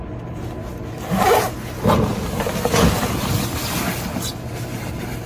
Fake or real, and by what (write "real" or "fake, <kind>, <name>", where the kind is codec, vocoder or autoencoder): real